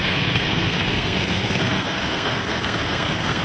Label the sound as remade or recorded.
remade